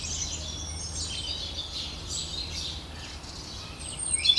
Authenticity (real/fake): real